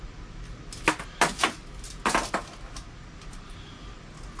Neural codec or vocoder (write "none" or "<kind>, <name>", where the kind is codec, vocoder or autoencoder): none